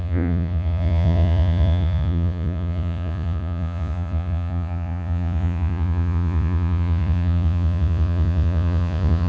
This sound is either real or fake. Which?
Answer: fake